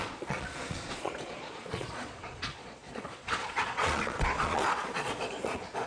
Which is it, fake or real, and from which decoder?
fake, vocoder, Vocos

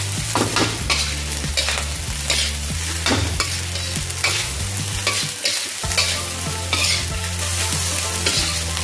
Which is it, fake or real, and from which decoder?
real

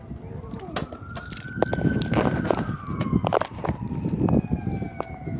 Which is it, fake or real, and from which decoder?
real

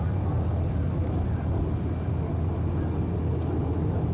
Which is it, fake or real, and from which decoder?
real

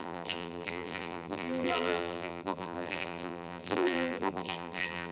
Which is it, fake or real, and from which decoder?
fake, vocoder, BigVGAN v2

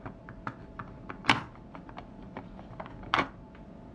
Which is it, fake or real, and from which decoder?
real